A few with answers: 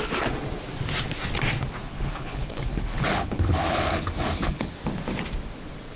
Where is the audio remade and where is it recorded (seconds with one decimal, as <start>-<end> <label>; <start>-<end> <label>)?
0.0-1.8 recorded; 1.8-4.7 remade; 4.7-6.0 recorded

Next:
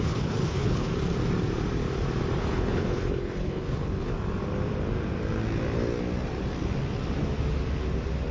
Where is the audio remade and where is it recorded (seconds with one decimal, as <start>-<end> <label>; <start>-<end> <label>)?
0.0-0.9 remade; 0.9-2.4 recorded; 2.4-4.1 remade; 4.1-8.3 recorded

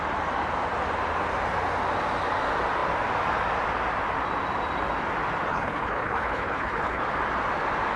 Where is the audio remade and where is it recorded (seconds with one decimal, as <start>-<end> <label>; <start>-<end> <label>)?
0.0-5.5 recorded; 5.5-7.0 remade; 7.0-8.0 recorded

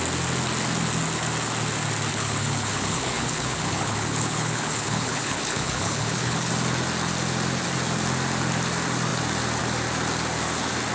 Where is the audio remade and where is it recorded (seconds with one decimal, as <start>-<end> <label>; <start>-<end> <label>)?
0.0-2.1 recorded; 2.1-6.5 remade; 6.5-10.9 recorded

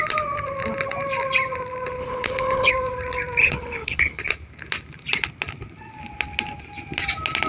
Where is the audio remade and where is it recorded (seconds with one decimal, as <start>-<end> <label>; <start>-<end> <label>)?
0.0-2.0 recorded; 2.0-2.7 remade; 2.7-3.4 recorded; 3.4-4.2 remade; 4.2-7.5 recorded

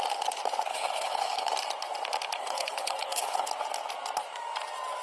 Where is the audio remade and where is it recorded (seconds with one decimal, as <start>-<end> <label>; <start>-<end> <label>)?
0.0-0.7 recorded; 0.7-1.5 remade; 1.5-2.4 recorded; 2.4-3.5 remade; 3.5-5.0 recorded

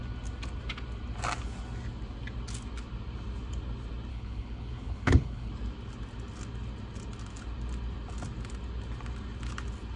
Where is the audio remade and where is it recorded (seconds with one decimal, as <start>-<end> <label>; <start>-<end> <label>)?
0.0-4.1 recorded; 4.1-5.5 remade; 5.5-10.0 recorded

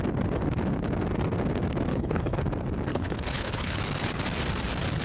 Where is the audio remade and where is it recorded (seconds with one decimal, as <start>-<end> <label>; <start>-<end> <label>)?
0.0-1.9 recorded; 1.9-2.4 remade; 2.4-2.9 recorded; 2.9-3.8 remade; 3.8-5.0 recorded